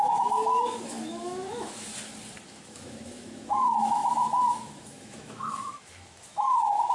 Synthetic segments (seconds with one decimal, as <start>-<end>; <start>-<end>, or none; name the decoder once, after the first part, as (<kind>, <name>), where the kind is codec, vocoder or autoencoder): 0.0-1.9 (autoencoder, DAC-VAE); 2.5-6.9